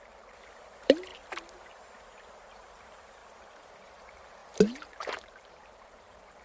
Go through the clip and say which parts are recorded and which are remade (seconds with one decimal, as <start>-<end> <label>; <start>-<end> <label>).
0.0-1.1 remade; 1.1-2.5 recorded; 2.5-3.2 remade; 3.2-3.9 recorded; 3.9-6.4 remade